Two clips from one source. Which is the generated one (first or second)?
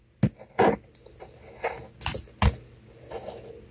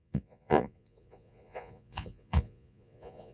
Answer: second